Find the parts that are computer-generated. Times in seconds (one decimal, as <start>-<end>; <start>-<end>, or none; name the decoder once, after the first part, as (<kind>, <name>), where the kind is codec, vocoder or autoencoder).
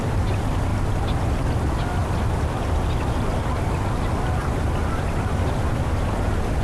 2.0-5.7 (vocoder, BigVGAN v2)